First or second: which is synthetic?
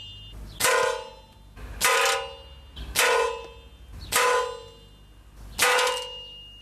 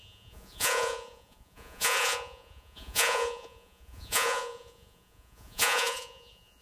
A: second